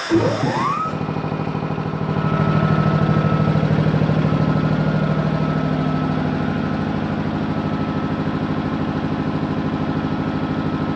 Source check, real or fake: real